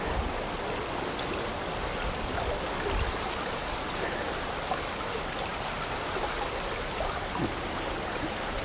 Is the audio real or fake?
real